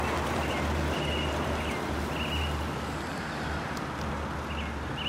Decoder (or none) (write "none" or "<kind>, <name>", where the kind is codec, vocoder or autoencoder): none